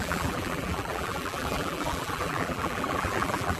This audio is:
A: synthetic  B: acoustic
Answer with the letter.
A